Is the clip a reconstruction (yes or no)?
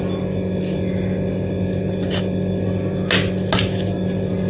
no